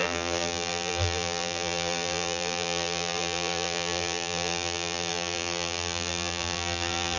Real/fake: fake